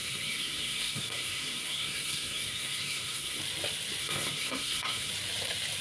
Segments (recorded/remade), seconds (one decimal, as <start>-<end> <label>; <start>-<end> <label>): 0.0-3.4 remade; 3.4-4.0 recorded; 4.0-5.1 remade; 5.1-5.8 recorded